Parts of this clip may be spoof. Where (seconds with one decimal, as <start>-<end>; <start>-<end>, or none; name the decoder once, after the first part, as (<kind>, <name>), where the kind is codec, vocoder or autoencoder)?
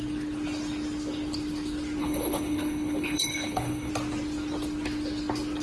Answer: 2.0-3.9 (codec, HILCodec)